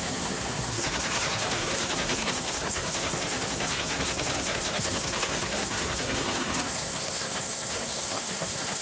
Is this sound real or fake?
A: fake